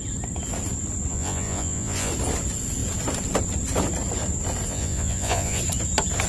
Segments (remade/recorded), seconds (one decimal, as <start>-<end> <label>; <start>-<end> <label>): 0.0-1.1 recorded; 1.1-2.1 remade; 2.1-4.7 recorded; 4.7-5.6 remade; 5.6-6.3 recorded